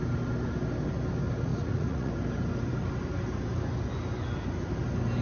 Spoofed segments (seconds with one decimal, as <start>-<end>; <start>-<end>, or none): 1.5-2.1